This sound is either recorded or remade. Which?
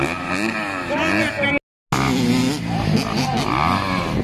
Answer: recorded